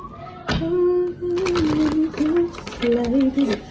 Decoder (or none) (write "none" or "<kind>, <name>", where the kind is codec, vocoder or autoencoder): none